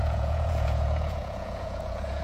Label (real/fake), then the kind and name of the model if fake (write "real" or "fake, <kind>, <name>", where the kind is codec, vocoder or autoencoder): fake, vocoder, Vocos